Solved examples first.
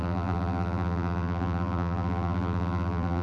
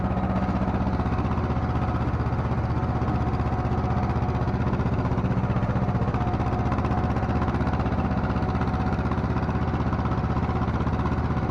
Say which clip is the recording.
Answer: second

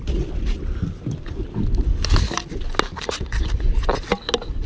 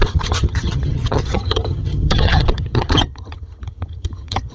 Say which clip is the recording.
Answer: first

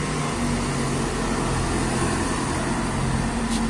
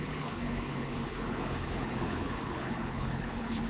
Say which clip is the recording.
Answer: first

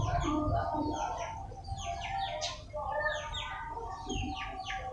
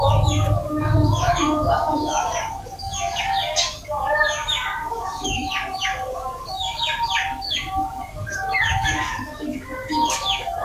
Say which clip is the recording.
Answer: first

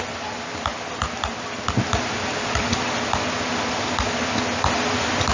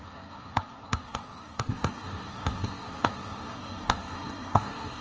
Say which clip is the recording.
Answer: first